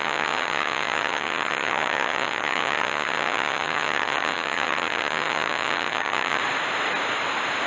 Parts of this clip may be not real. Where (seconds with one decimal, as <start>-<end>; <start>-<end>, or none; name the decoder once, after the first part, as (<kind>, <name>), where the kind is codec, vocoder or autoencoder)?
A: 0.0-6.4 (vocoder, HiFi-GAN)